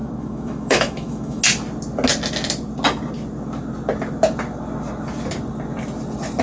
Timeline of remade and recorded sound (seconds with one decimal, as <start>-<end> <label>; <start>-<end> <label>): 0.0-1.4 remade; 1.4-6.4 recorded